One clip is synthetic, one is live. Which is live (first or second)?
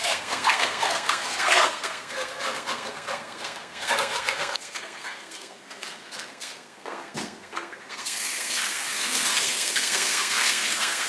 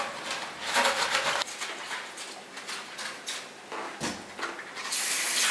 second